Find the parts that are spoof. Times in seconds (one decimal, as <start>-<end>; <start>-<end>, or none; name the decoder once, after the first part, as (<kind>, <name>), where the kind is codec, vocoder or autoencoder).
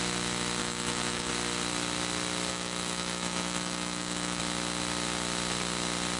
0.6-1.3 (autoencoder, DAC-VAE); 2.5-4.4